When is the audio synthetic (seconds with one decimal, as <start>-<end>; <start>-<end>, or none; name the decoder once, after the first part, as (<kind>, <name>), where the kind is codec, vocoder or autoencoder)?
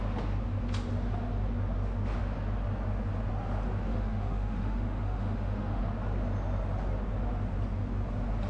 3.9-5.8 (autoencoder, DAC-VAE)